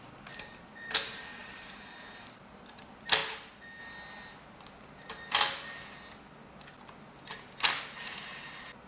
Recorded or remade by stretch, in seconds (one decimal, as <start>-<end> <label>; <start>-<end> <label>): 0.0-1.4 recorded; 1.4-2.8 remade; 2.8-8.9 recorded